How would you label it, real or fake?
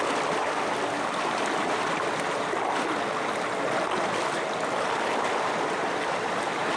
real